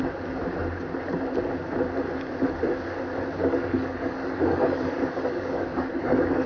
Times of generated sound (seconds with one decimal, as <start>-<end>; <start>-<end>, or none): 3.4-6.5